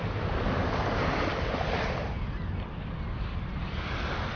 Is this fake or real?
real